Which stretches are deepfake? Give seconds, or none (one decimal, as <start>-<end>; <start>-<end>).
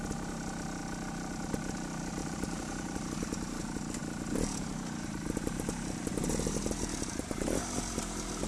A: 2.2-3.6; 4.0-8.5